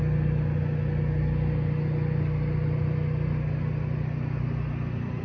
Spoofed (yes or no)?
no